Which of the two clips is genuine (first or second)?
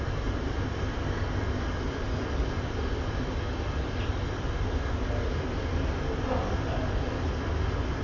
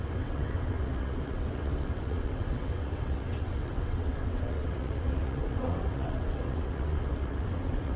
first